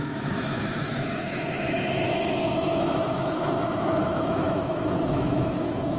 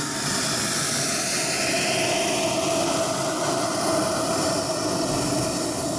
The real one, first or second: second